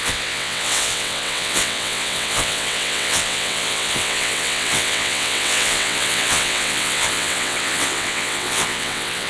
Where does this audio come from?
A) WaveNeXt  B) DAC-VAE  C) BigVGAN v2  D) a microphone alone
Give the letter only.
A